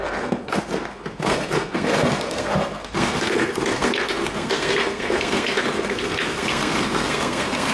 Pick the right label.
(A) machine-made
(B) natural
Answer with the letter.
A